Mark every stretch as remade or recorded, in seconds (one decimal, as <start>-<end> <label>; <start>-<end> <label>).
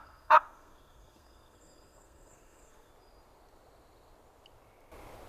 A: 0.0-2.9 remade; 2.9-5.3 recorded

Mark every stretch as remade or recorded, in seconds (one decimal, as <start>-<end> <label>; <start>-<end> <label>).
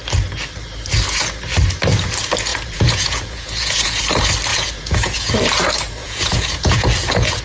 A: 0.0-2.5 recorded; 2.5-4.0 remade; 4.0-4.5 recorded; 4.5-5.3 remade; 5.3-6.0 recorded; 6.0-7.4 remade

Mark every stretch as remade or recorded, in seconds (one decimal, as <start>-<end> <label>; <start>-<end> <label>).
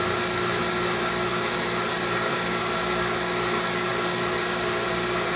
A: 0.0-5.4 recorded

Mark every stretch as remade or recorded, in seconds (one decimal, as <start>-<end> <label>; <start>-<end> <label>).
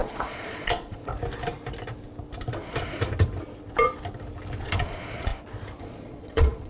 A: 0.0-1.1 remade; 1.1-4.6 recorded; 4.6-5.3 remade; 5.3-5.8 recorded; 5.8-6.7 remade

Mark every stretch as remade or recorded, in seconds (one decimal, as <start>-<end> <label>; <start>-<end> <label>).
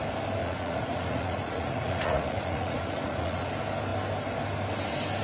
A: 0.0-0.4 recorded; 0.4-3.5 remade; 3.5-5.2 recorded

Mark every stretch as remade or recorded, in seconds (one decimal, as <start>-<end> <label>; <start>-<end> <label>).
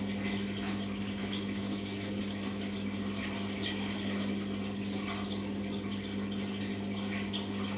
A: 0.0-1.2 recorded; 1.2-2.2 remade; 2.2-7.8 recorded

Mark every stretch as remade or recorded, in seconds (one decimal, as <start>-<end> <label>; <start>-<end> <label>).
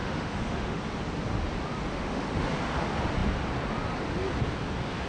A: 0.0-0.8 remade; 0.8-1.9 recorded; 1.9-2.5 remade; 2.5-5.1 recorded